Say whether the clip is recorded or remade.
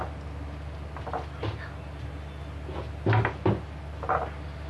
recorded